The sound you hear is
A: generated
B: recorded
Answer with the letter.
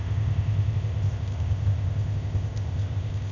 A